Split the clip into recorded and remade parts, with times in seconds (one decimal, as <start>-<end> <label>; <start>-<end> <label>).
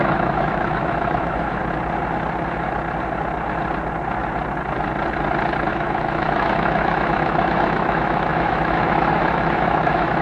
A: 0.0-1.6 remade; 1.6-5.7 recorded; 5.7-10.2 remade